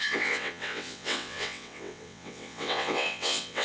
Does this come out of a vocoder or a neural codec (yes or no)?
yes